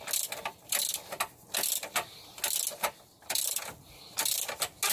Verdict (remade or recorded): recorded